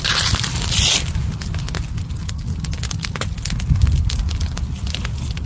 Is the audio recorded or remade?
recorded